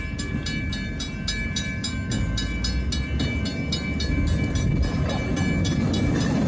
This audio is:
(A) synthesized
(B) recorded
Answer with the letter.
B